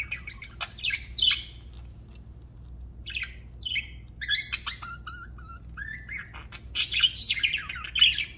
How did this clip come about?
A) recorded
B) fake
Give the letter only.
A